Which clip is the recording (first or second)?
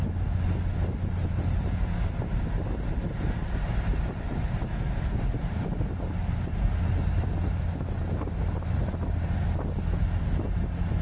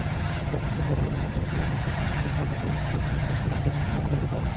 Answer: first